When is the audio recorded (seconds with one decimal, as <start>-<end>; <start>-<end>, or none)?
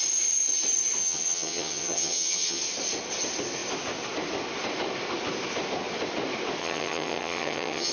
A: 0.0-1.0; 2.6-6.6